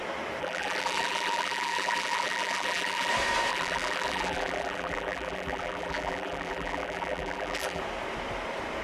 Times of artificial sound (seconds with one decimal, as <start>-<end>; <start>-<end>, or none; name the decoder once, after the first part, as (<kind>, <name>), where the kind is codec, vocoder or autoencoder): 0.4-3.1 (vocoder, BigVGAN v2); 3.5-7.8